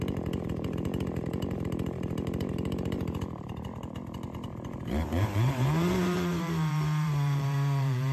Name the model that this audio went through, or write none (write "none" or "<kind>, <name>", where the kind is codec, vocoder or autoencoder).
vocoder, BigVGAN v2